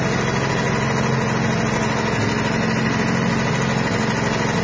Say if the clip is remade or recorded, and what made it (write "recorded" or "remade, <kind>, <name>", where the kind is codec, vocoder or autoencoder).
recorded